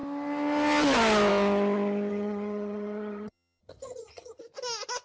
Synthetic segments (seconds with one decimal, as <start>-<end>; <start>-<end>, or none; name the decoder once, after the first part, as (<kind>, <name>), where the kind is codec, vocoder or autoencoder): 2.1-4.4 (vocoder, HiFi-GAN)